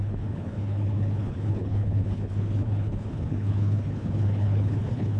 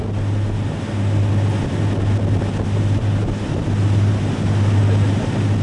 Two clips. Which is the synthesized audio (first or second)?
first